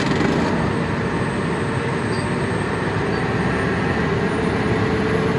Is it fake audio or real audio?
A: real